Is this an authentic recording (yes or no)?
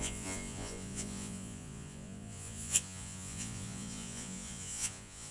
no